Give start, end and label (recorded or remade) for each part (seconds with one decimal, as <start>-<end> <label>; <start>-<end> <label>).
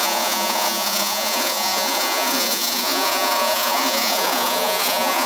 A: 0.0-5.3 remade